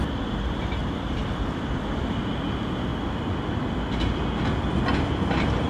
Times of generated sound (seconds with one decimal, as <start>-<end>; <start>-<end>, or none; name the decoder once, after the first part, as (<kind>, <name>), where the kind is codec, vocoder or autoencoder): 0.8-2.2 (vocoder, BigVGAN v2); 2.9-3.4